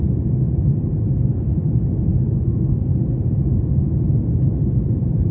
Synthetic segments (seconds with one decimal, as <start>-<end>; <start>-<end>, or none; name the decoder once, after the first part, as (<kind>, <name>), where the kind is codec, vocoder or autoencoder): 2.1-2.9 (codec, SNAC)